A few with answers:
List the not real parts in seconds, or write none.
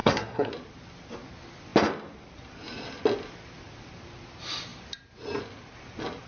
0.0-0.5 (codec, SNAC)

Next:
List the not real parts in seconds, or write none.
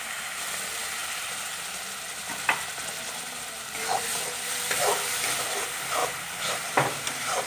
6.0-7.5 (vocoder, BigVGAN v2)